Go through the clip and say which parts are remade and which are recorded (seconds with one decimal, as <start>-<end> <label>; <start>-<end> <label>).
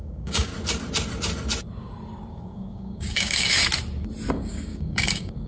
0.0-0.5 remade; 0.5-2.3 recorded; 2.3-3.6 remade; 3.6-4.3 recorded; 4.3-5.5 remade